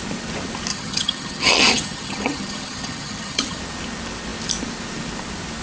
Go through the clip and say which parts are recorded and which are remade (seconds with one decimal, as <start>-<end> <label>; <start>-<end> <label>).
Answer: 0.0-0.7 recorded; 0.7-3.6 remade; 3.6-5.6 recorded